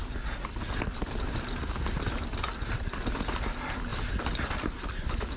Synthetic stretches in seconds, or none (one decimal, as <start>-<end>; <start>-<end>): none